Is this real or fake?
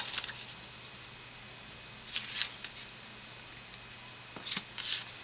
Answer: real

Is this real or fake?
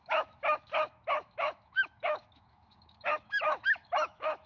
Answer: fake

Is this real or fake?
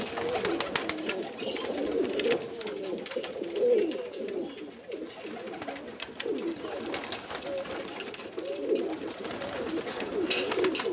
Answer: real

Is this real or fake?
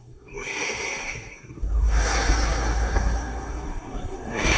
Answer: fake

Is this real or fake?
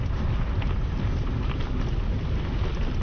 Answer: real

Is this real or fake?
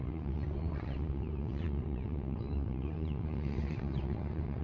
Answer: fake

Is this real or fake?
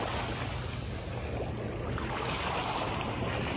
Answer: real